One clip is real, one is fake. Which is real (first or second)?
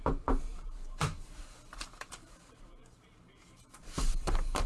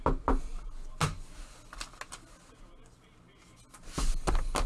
second